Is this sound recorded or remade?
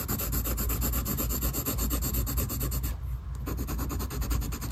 recorded